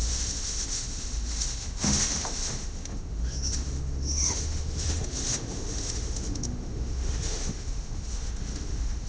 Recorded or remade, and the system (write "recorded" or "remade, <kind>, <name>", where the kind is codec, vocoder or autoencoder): remade, autoencoder, DAC-VAE